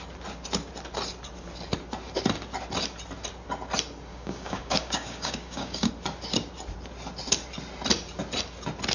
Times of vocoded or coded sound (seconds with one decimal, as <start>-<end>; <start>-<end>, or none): 4.1-5.9